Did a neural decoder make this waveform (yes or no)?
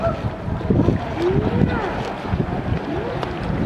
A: no